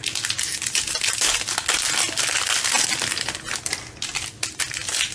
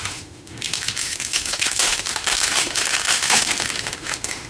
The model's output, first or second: second